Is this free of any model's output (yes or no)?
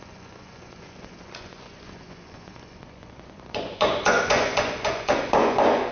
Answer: no